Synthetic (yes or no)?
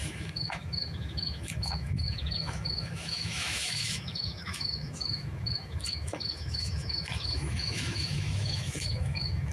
yes